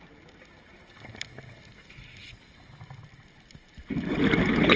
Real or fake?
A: real